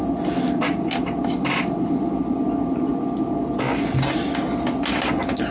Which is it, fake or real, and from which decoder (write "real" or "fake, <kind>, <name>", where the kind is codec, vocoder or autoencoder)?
real